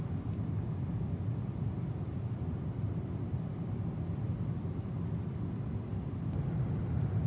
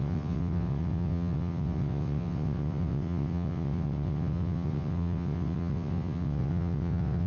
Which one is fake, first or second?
second